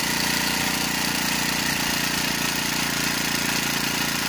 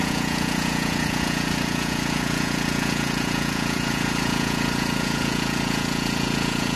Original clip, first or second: first